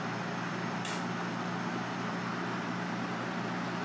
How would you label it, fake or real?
real